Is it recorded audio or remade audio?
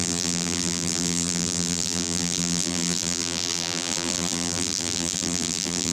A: remade